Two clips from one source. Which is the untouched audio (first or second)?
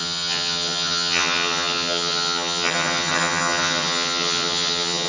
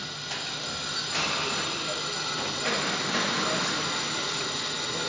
second